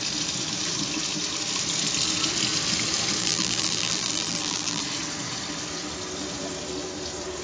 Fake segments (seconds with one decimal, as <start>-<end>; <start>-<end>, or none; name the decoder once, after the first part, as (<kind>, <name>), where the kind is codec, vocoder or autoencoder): 3.2-4.8 (vocoder, BigVGAN v2)